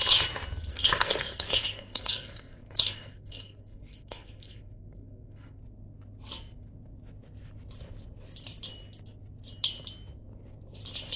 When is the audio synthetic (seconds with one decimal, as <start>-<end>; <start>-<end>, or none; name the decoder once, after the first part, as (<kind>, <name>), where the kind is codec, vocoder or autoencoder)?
0.7-5.6 (codec, SNAC)